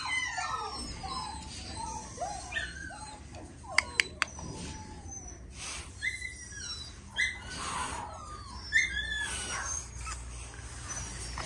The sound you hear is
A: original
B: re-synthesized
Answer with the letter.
A